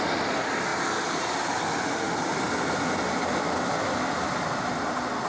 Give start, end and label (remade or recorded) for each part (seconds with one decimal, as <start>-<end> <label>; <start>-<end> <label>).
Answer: 0.0-5.3 recorded